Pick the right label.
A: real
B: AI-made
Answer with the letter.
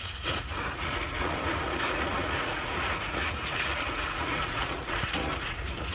B